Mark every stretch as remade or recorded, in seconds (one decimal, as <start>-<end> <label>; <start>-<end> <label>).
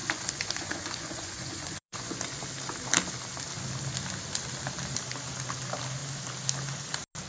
0.0-2.4 remade; 2.4-7.3 recorded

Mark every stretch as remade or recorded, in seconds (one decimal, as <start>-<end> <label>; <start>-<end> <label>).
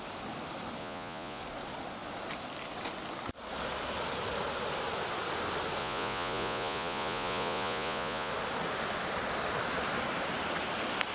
0.0-0.8 recorded; 0.8-1.4 remade; 1.4-5.8 recorded; 5.8-8.3 remade; 8.3-11.1 recorded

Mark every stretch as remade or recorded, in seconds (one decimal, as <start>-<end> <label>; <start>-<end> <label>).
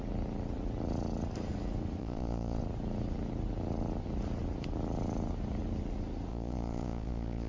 0.0-2.0 recorded; 2.0-2.6 remade; 2.6-6.3 recorded; 6.3-7.5 remade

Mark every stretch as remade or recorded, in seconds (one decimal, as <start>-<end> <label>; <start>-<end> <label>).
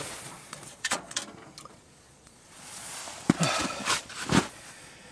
0.0-1.2 remade; 1.2-1.7 recorded; 1.7-3.0 remade; 3.0-4.5 recorded; 4.5-5.1 remade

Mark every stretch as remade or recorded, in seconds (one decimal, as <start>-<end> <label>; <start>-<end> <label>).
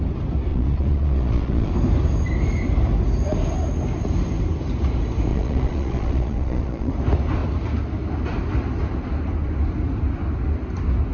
0.0-0.5 recorded; 0.5-1.7 remade; 1.7-5.3 recorded; 5.3-6.9 remade; 6.9-11.1 recorded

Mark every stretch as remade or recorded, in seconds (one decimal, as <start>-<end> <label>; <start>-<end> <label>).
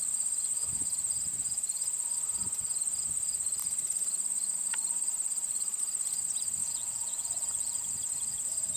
0.0-6.6 recorded; 6.6-7.8 remade; 7.8-8.8 recorded